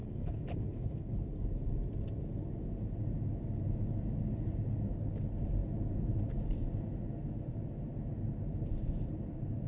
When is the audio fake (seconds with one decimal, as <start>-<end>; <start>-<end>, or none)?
0.0-1.1